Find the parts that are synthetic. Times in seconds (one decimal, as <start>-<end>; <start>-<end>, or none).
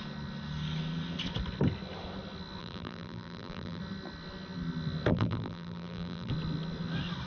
2.6-3.8; 5.1-6.3